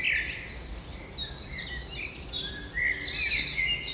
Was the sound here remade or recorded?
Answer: recorded